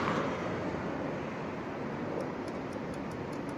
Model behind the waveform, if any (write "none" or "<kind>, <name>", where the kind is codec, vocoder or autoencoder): none